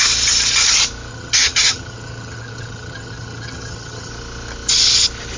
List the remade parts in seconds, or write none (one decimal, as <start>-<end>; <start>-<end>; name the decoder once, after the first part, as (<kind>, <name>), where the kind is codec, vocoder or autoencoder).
1.1-4.1 (vocoder, HiFi-GAN)